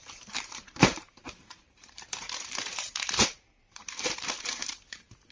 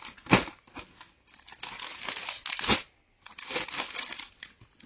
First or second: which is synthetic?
first